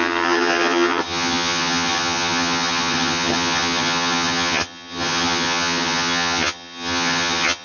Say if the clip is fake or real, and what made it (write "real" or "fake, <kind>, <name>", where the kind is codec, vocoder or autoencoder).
fake, vocoder, HiFi-GAN